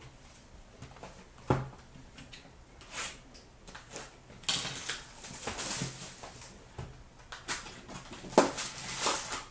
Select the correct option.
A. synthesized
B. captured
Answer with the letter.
B